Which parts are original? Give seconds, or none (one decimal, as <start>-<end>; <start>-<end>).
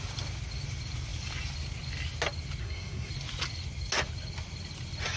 0.0-2.6; 3.1-5.2